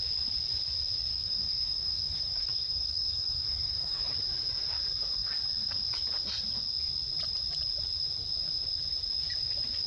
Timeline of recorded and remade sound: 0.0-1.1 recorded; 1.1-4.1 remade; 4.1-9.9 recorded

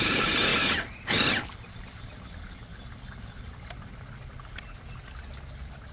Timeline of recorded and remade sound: 0.0-5.9 recorded